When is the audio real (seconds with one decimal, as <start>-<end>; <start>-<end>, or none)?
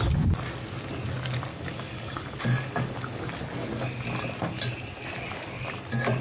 0.0-1.5; 3.3-6.2